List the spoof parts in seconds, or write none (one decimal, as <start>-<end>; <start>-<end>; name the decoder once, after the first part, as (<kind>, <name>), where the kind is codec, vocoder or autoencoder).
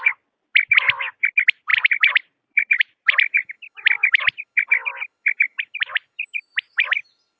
1.7-3.1 (vocoder, BigVGAN v2)